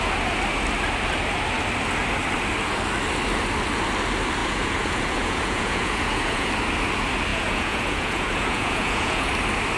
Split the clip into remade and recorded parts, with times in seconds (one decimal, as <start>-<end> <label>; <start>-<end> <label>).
0.0-4.4 recorded; 4.4-6.5 remade; 6.5-7.3 recorded; 7.3-9.3 remade; 9.3-9.8 recorded